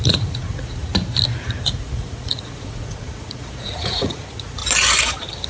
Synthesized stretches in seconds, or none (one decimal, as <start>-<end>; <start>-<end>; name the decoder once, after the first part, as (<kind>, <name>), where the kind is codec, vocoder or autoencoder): 0.0-0.9 (vocoder, Vocos); 1.6-4.6